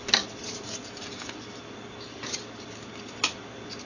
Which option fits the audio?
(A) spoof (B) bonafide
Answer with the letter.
B